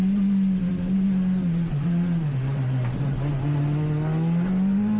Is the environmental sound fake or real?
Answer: real